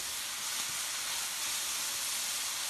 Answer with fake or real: real